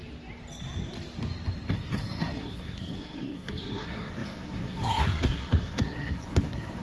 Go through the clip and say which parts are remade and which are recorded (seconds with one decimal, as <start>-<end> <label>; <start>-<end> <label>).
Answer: 0.0-1.7 recorded; 1.7-6.8 remade